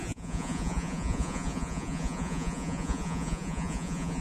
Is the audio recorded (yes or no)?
no